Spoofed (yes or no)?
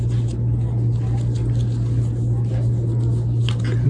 no